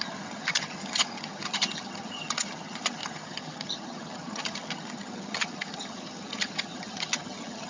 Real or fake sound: fake